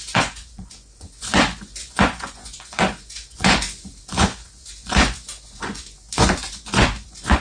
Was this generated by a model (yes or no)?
yes